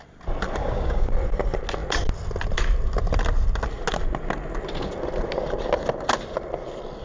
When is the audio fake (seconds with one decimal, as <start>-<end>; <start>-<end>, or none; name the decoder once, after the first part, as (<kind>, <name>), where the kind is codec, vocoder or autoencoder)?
0.6-1.1 (codec, DAC)